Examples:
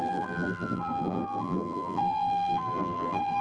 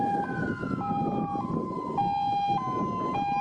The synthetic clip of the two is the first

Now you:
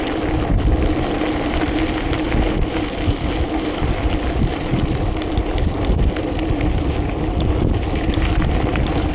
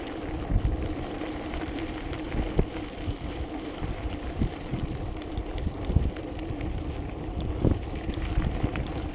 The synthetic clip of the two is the second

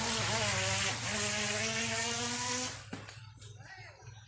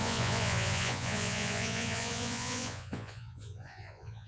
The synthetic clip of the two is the second